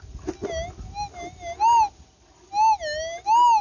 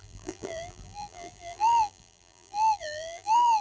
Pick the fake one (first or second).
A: second